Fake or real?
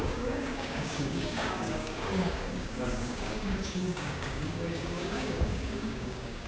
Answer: fake